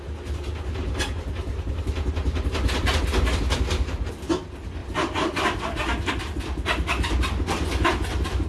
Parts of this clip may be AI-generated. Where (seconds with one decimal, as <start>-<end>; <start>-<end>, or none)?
4.8-6.1